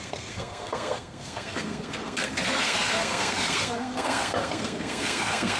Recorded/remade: remade